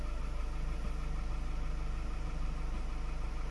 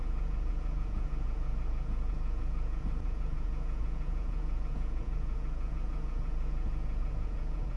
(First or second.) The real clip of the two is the first